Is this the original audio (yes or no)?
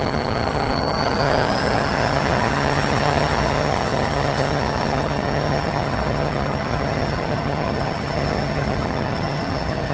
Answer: no